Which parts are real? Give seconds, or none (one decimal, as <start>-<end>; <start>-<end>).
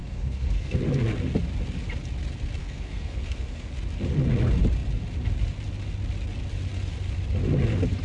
0.8-2.6; 3.7-8.0